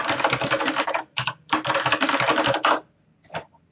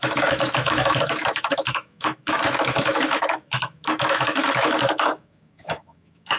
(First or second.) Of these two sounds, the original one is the first